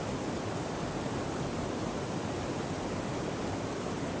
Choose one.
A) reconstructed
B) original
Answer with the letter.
B